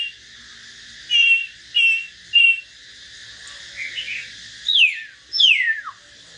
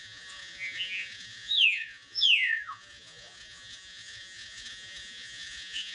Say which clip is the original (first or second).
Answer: first